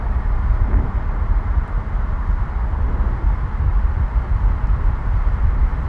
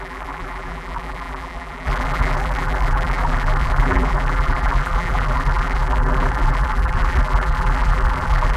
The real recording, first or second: first